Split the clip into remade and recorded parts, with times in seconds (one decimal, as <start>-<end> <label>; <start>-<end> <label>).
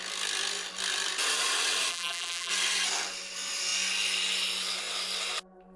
0.0-1.9 recorded; 1.9-2.5 remade; 2.5-5.8 recorded